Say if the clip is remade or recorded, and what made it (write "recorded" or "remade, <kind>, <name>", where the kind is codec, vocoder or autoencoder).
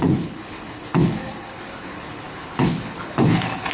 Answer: remade, codec, HILCodec